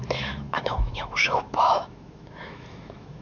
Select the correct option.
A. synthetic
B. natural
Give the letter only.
A